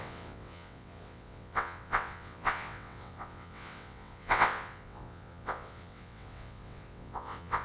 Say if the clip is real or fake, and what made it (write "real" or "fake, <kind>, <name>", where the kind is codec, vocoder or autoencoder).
fake, vocoder, WaveNeXt